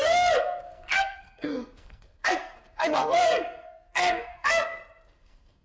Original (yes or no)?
no